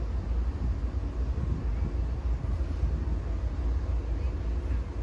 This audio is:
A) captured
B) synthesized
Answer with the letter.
A